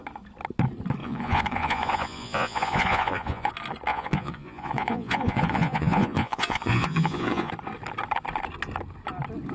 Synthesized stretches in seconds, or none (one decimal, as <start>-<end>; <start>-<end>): 1.0-3.5; 3.9-7.5